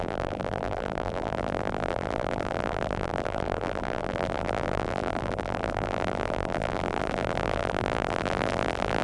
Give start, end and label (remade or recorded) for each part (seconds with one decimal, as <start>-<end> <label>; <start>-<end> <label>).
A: 0.0-9.0 remade